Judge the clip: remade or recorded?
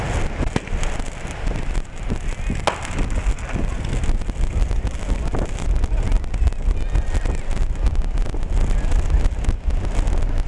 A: recorded